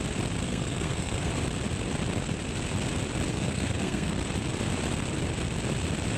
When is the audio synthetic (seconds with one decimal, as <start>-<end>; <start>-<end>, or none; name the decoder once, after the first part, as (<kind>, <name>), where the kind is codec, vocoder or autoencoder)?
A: 0.4-1.3 (codec, SNAC); 3.3-4.1